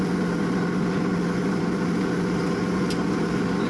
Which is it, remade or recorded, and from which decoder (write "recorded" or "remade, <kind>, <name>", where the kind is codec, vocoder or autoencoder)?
recorded